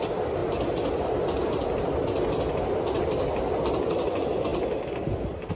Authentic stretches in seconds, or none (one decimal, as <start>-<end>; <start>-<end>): 0.0-5.5